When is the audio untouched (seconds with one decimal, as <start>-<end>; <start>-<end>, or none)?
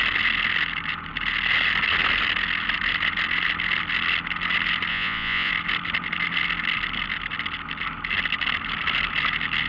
0.0-4.9; 5.5-9.7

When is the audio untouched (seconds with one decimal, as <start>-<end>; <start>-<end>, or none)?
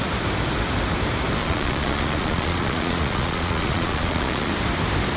0.0-1.4; 4.5-5.2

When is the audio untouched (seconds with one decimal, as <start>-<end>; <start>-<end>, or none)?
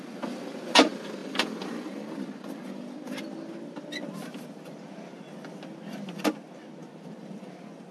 0.0-1.2; 3.2-6.8; 7.5-7.9